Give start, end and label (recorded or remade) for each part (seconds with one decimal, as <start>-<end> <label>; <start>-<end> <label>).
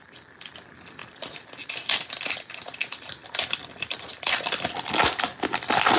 0.0-1.0 recorded; 1.0-1.5 remade; 1.5-3.2 recorded; 3.2-5.1 remade; 5.1-6.0 recorded